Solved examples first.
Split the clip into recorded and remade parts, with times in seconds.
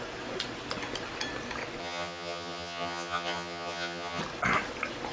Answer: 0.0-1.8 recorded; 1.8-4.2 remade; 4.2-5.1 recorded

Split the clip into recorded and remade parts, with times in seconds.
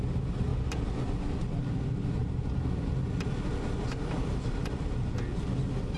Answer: 0.0-6.0 recorded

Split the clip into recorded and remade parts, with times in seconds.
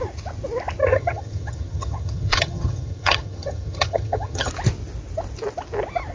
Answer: 0.0-0.8 recorded; 0.8-4.5 remade; 4.5-6.1 recorded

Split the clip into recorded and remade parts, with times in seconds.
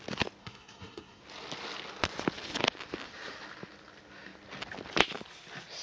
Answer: 0.0-0.4 recorded; 0.4-1.2 remade; 1.2-5.8 recorded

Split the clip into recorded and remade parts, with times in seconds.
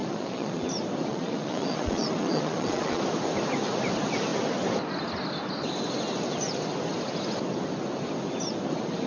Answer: 0.0-0.7 remade; 0.7-1.1 recorded; 1.1-3.0 remade; 3.0-9.1 recorded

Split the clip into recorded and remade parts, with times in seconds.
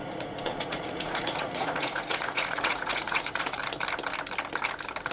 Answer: 0.0-0.5 recorded; 0.5-3.6 remade; 3.6-5.1 recorded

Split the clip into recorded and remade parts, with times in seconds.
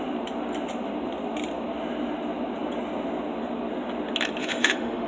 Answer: 0.0-4.4 recorded; 4.4-5.1 remade